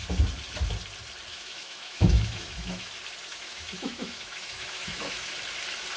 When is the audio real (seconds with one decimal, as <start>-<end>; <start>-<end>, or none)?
0.0-1.3; 2.9-3.3; 5.3-6.0